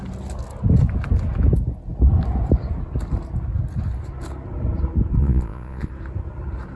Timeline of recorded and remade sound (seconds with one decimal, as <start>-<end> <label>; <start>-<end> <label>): 0.0-5.2 recorded; 5.2-5.9 remade; 5.9-6.8 recorded